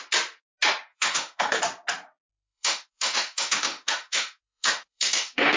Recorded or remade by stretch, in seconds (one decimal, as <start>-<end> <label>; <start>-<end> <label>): 0.0-0.9 recorded; 0.9-1.6 remade; 1.6-2.3 recorded; 2.3-5.6 remade